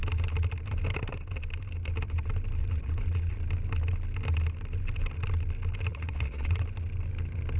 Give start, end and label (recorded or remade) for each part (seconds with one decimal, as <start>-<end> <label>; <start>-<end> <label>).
0.0-2.6 recorded; 2.6-3.4 remade; 3.4-5.9 recorded; 5.9-6.6 remade; 6.6-7.6 recorded